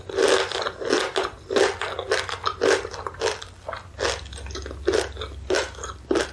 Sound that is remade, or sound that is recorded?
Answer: recorded